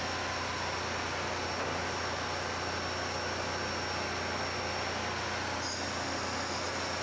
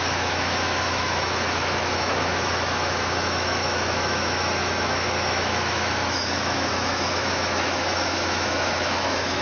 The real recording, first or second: first